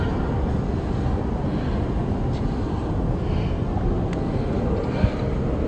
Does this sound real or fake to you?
real